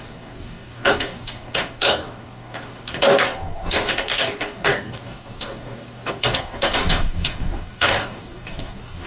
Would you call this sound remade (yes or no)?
yes